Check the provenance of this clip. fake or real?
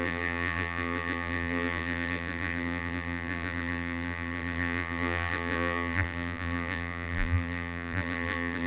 fake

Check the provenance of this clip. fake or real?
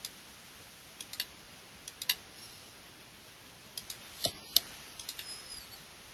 real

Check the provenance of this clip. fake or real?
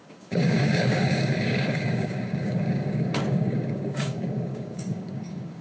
fake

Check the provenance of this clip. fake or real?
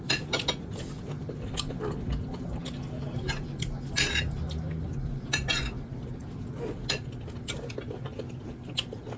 real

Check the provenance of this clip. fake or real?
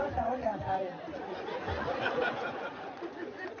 fake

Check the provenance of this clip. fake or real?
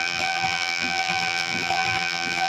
fake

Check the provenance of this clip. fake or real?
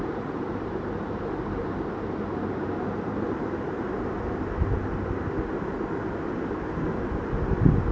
real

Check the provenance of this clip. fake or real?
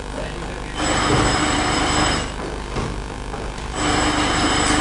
real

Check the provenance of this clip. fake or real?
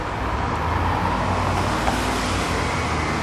real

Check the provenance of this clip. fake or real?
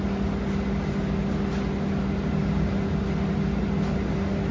real